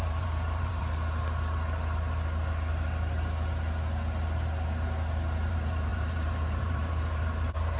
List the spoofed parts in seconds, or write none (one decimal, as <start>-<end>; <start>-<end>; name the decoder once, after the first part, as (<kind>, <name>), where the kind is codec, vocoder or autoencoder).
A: 0.0-0.8 (vocoder, BigVGAN v2); 5.5-7.8

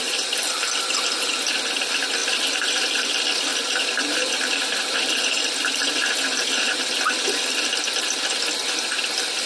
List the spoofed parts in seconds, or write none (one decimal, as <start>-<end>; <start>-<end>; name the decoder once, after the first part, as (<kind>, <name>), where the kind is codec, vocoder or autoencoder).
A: 0.0-1.1 (vocoder, BigVGAN v2); 2.2-3.1; 3.5-6.8

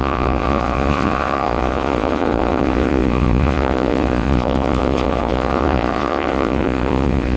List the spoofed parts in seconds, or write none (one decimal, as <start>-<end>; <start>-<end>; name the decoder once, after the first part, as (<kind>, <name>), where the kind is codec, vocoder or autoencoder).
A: 0.0-7.4 (vocoder, Vocos)